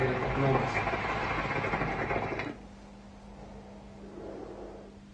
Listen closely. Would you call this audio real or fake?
real